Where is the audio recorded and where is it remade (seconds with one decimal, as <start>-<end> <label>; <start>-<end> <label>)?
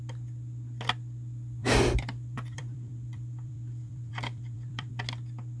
0.0-1.6 recorded; 1.6-4.9 remade; 4.9-5.6 recorded